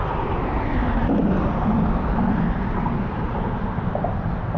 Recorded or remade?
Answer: recorded